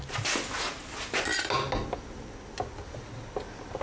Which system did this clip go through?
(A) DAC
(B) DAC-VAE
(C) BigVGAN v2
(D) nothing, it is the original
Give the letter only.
D